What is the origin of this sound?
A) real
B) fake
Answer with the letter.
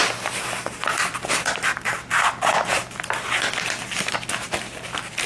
A